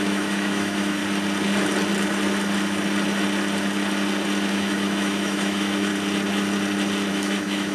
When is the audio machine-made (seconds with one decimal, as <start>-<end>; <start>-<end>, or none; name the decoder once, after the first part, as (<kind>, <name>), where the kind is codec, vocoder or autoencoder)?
0.0-1.0 (autoencoder, DAC-VAE); 4.5-5.9; 7.1-7.7

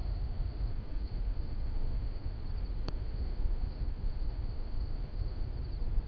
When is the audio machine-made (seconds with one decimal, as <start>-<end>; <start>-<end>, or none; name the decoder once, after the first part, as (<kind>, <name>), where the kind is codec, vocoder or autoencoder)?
0.0-2.4 (autoencoder, DAC-VAE); 2.8-5.5